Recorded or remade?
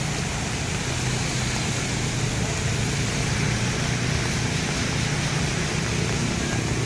recorded